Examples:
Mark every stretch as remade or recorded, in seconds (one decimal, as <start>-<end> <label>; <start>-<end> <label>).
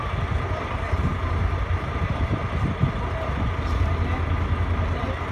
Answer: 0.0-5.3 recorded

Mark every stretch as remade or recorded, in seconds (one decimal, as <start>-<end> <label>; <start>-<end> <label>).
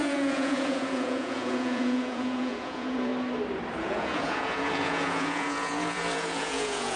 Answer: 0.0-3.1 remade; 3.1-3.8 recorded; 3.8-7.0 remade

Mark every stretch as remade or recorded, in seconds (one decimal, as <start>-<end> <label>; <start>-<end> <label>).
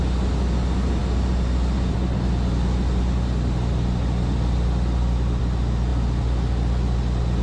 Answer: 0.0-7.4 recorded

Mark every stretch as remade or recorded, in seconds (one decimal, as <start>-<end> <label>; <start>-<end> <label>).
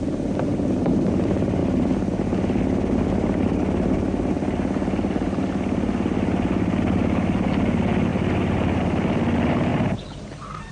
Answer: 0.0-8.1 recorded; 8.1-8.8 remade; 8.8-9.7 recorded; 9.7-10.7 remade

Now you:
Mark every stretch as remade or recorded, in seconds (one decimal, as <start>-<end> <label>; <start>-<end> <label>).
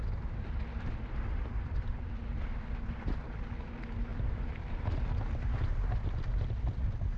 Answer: 0.0-1.4 recorded; 1.4-3.4 remade; 3.4-4.1 recorded; 4.1-7.2 remade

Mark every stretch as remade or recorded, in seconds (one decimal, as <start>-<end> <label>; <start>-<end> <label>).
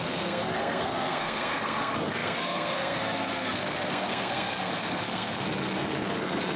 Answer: 0.0-6.6 remade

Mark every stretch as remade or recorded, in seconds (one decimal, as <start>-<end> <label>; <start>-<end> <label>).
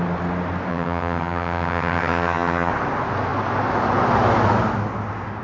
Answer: 0.0-0.7 recorded; 0.7-2.7 remade; 2.7-5.4 recorded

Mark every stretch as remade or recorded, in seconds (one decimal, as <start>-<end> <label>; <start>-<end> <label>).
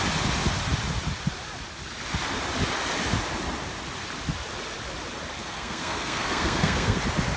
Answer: 0.0-5.4 recorded; 5.4-7.0 remade; 7.0-7.4 recorded